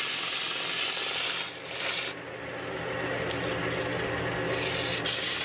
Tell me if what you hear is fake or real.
real